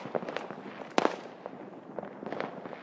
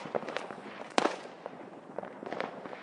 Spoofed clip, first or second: second